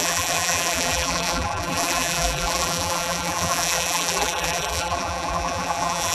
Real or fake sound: fake